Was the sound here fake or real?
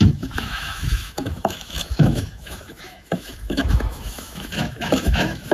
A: fake